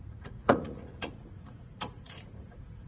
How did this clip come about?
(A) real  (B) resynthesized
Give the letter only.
B